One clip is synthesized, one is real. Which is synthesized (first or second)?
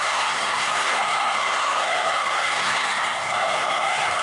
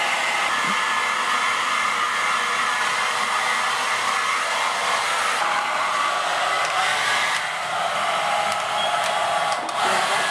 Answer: first